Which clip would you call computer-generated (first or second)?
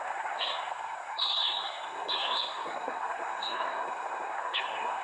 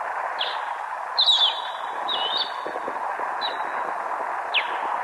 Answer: first